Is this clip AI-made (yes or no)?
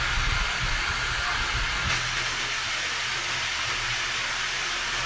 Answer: no